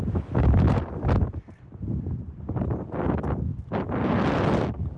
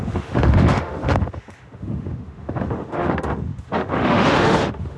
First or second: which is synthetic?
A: second